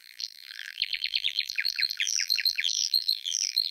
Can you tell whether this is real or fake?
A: fake